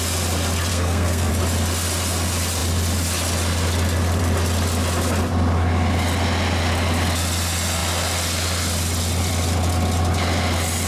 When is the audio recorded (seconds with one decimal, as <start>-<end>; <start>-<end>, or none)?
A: 0.0-0.7; 1.3-10.9